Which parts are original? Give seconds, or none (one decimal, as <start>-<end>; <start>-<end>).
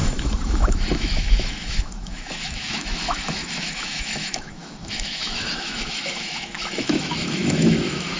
none